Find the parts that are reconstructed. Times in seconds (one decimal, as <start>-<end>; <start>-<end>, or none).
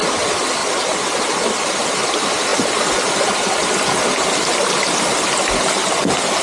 0.6-1.9; 2.5-3.3